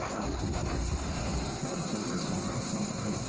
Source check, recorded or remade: remade